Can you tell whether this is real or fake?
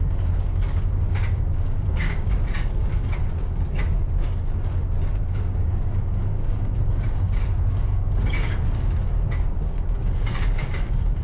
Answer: fake